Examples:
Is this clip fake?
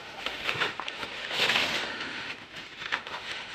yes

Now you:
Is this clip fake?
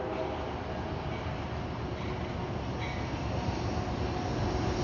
no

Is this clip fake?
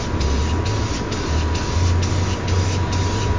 no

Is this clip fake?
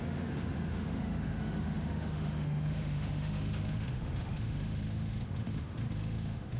yes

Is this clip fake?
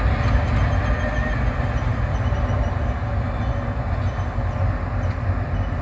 no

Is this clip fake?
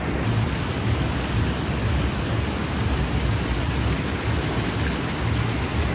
no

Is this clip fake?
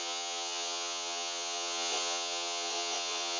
yes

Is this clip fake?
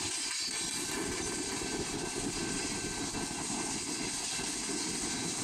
no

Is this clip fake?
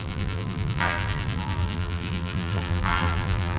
yes